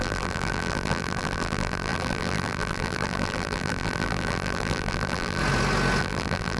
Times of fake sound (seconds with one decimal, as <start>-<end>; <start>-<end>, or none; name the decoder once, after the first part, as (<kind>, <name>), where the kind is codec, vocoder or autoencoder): 0.0-5.4 (vocoder, BigVGAN v2); 6.0-6.6